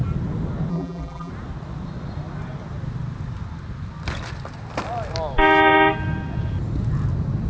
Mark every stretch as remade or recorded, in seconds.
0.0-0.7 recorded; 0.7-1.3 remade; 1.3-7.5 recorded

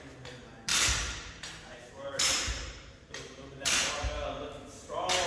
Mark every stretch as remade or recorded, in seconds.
0.0-0.7 recorded; 0.7-3.9 remade; 3.9-5.3 recorded

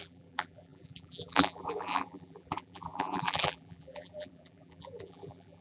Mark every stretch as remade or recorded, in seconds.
0.0-5.6 remade

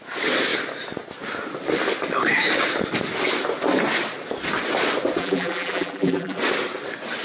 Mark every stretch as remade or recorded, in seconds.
0.0-5.2 recorded; 5.2-6.4 remade; 6.4-7.2 recorded